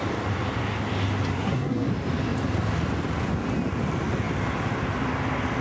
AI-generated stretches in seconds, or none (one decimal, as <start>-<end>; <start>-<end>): 1.3-1.9